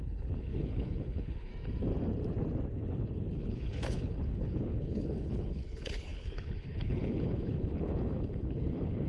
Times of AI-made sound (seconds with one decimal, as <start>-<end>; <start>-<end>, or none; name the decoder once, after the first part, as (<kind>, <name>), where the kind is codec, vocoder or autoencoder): 0.0-1.5 (codec, HILCodec); 2.7-9.1